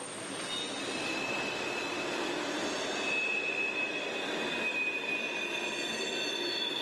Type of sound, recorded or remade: recorded